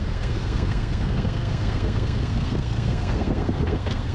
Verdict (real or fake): fake